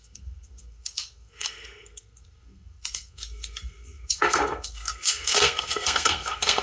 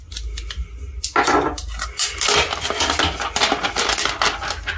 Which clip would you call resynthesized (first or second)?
first